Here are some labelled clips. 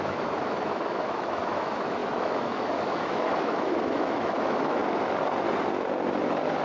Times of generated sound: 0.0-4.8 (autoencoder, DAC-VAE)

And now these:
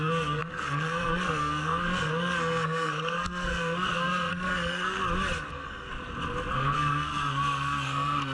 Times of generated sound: 0.0-5.0 (codec, SNAC); 5.5-5.9; 6.5-8.3

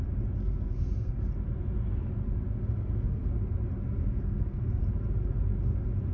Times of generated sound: 0.4-1.2 (codec, SNAC); 2.5-3.3; 4.0-4.8

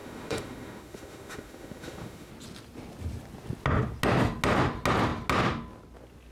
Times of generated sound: 0.0-2.3 (autoencoder, DAC-VAE)